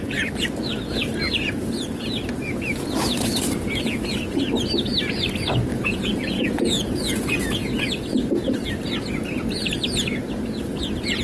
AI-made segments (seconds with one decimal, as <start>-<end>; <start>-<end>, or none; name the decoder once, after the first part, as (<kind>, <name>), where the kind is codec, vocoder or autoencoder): 5.7-7.6 (vocoder, Vocos)